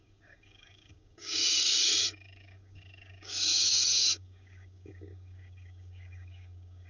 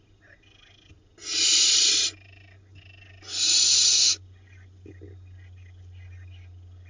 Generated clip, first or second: first